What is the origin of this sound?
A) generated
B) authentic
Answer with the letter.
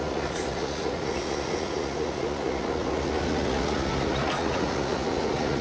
A